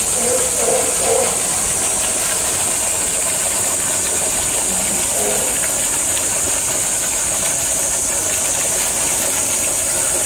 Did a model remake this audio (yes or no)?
no